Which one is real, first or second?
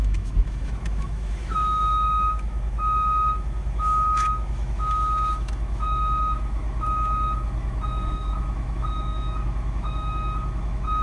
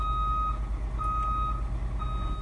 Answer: second